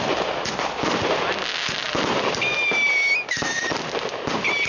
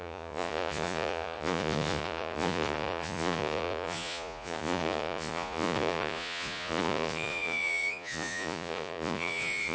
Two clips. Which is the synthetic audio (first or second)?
second